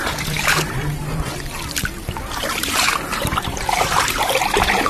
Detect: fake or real fake